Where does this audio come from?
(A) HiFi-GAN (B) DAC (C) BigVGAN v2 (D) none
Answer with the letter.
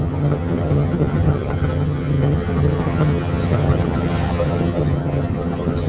A